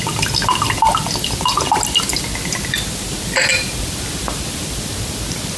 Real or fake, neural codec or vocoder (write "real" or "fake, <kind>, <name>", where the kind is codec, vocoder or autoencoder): real